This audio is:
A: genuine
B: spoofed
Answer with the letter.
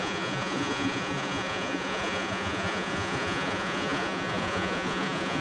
B